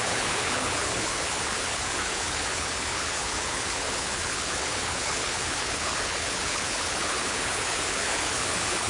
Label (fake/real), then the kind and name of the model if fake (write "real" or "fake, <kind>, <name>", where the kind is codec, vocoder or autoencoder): fake, codec, HILCodec